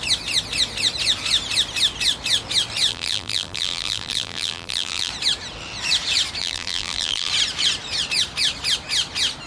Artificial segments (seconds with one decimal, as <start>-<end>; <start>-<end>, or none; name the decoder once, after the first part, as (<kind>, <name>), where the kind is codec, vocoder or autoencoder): 2.9-5.1 (vocoder, BigVGAN v2); 6.4-7.3